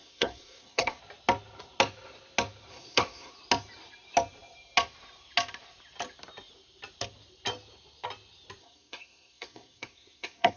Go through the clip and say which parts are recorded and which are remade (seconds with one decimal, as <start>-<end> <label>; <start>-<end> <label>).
0.0-1.0 remade; 1.0-2.7 recorded; 2.7-3.3 remade; 3.3-8.6 recorded; 8.6-10.6 remade